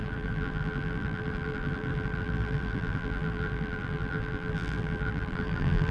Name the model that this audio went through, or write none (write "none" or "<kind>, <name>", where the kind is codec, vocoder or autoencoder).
vocoder, BigVGAN v2